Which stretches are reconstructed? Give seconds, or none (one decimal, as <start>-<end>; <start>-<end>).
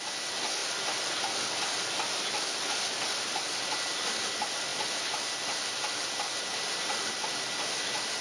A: none